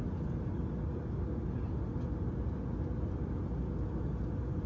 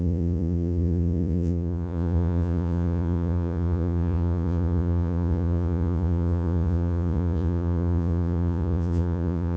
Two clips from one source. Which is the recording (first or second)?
first